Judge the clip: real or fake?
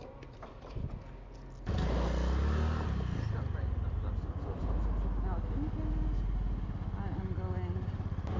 real